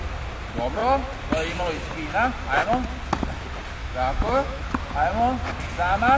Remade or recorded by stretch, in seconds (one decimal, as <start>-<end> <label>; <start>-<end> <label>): 0.0-3.8 recorded; 3.8-4.6 remade; 4.6-6.2 recorded

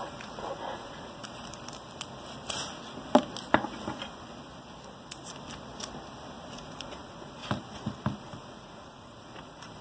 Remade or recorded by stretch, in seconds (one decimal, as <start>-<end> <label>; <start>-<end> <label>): 0.0-1.2 remade; 1.2-6.5 recorded; 6.5-7.4 remade; 7.4-8.2 recorded; 8.2-9.8 remade

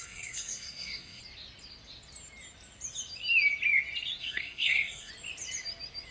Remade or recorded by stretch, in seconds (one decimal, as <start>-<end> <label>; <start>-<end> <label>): 0.0-1.2 remade; 1.2-4.2 recorded; 4.2-5.1 remade; 5.1-6.1 recorded

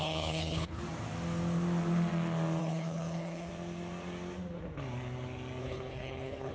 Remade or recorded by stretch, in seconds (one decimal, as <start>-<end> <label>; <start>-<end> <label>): 0.0-0.8 remade; 0.8-2.6 recorded; 2.6-3.5 remade; 3.5-5.6 recorded; 5.6-6.5 remade

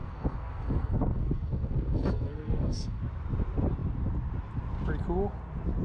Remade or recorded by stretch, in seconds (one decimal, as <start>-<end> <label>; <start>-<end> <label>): 0.0-3.0 remade; 3.0-5.8 recorded

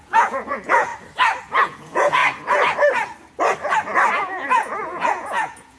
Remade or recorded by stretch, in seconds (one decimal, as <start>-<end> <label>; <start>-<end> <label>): 0.0-0.9 remade; 0.9-1.5 recorded; 1.5-2.2 remade; 2.2-4.1 recorded; 4.1-5.8 remade

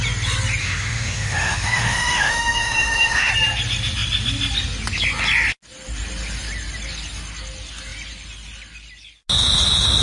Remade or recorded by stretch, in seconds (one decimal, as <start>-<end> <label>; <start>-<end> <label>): 0.0-0.6 recorded; 0.6-3.3 remade; 3.3-10.0 recorded

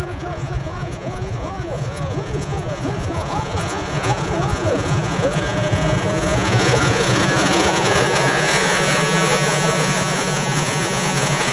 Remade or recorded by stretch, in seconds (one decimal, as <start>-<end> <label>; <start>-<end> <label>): 0.0-11.5 remade